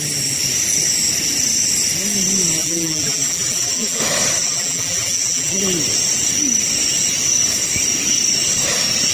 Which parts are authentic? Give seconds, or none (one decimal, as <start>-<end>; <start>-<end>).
0.0-2.6; 4.0-4.4; 5.6-9.1